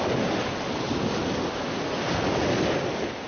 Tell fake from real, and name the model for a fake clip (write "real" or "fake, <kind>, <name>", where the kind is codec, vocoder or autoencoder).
real